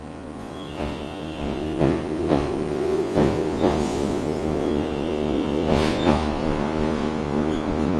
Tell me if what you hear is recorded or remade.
remade